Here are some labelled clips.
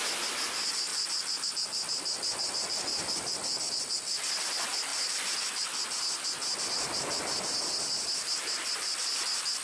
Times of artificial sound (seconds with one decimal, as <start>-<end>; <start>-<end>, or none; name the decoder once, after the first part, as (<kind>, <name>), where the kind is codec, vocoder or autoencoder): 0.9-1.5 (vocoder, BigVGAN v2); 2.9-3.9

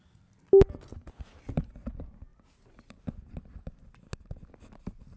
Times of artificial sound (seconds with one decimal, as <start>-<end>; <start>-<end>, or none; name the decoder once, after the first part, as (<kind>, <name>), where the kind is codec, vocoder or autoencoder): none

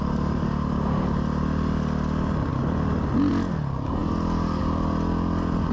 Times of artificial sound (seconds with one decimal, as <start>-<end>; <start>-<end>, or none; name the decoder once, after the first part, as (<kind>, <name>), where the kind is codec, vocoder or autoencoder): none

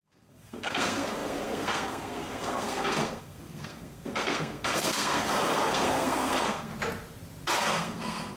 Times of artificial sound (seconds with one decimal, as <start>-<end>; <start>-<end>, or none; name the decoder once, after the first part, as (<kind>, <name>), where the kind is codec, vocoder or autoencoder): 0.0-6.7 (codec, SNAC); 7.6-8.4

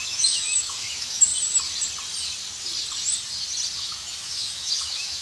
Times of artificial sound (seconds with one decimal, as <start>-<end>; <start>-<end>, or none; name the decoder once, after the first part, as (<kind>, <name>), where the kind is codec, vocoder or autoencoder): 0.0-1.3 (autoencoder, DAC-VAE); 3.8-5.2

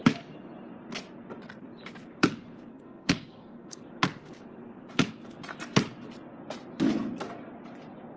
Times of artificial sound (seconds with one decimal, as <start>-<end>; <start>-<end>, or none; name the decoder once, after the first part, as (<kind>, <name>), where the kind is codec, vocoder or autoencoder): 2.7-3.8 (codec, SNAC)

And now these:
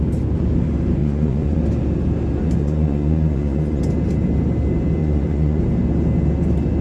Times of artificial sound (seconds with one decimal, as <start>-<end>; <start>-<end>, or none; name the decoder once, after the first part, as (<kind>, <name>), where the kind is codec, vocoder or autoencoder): 1.0-1.6 (vocoder, Vocos); 2.6-3.8; 5.0-5.6

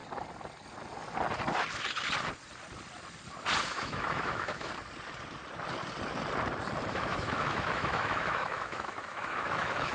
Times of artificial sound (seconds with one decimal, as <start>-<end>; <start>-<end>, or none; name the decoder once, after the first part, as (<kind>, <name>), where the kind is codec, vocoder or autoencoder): 3.6-4.7 (autoencoder, DAC-VAE); 6.9-9.9